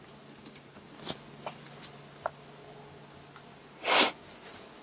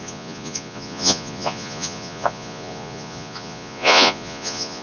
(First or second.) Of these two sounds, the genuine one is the first